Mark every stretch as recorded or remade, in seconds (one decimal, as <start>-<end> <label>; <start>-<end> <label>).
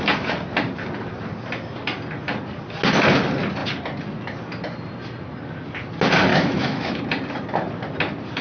0.0-6.3 recorded; 6.3-7.0 remade; 7.0-8.4 recorded